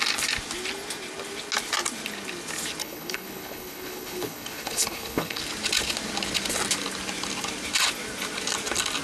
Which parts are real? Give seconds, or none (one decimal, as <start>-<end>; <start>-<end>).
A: 0.0-2.8; 5.4-9.0